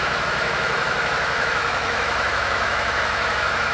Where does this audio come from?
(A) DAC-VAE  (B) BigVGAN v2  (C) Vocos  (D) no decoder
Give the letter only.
A